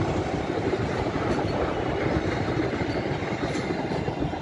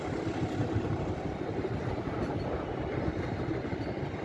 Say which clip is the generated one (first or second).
first